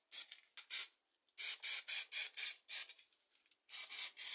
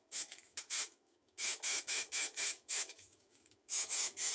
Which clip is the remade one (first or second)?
second